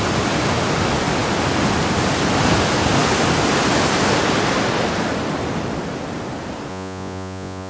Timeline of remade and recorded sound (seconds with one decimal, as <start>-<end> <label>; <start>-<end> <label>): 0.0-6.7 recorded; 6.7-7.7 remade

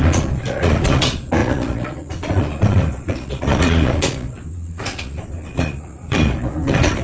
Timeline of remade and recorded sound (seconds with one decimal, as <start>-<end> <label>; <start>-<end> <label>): 0.0-7.0 remade

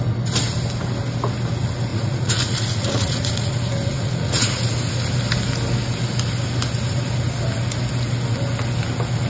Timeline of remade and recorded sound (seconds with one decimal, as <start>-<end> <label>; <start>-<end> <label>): 0.0-1.9 recorded; 1.9-3.5 remade; 3.5-3.9 recorded; 3.9-4.7 remade; 4.7-9.3 recorded

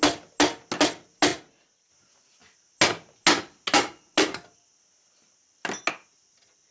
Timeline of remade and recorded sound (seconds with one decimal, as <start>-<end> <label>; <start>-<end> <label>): 0.0-1.3 recorded; 1.3-1.9 remade; 1.9-6.7 recorded